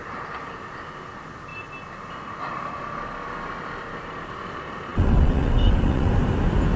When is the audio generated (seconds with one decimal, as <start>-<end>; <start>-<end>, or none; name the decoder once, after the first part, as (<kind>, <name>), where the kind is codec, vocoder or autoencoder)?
4.9-6.1 (vocoder, WaveNeXt)